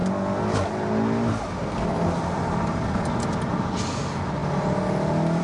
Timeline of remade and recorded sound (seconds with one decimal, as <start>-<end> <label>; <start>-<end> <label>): 0.0-5.4 recorded